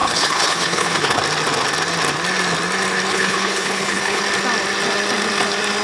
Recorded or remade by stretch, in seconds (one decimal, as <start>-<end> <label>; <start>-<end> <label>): 0.0-1.2 remade; 1.2-3.1 recorded; 3.1-4.2 remade; 4.2-5.8 recorded